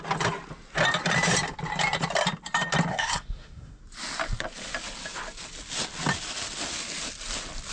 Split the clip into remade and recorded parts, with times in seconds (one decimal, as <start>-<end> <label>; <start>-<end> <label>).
0.0-2.9 recorded; 2.9-3.8 remade; 3.8-7.7 recorded